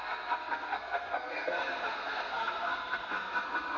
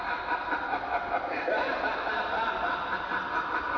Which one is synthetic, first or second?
first